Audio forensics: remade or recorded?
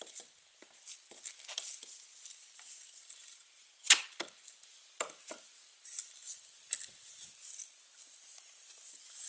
recorded